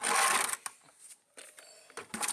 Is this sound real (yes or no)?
yes